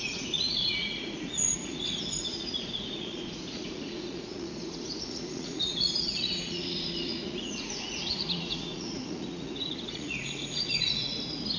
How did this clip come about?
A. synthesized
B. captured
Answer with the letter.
A